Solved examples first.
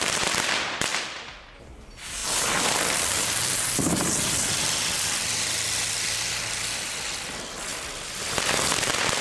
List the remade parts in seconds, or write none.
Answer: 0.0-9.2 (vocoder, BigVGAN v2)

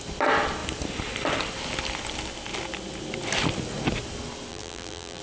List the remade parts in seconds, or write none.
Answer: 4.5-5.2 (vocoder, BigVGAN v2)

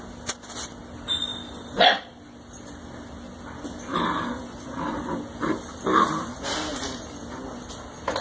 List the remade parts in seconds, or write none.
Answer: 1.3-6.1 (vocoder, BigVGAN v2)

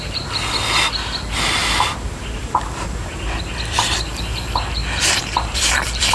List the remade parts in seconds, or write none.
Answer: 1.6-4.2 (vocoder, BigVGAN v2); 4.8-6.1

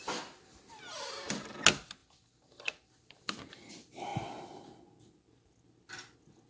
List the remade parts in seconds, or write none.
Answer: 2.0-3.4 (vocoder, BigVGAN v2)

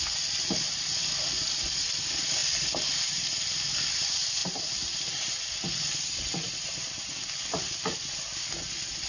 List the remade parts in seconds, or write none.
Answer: 4.4-5.5 (vocoder, BigVGAN v2); 6.4-7.1

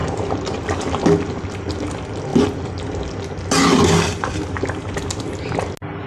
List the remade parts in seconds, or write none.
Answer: 0.0-1.0 (vocoder, BigVGAN v2)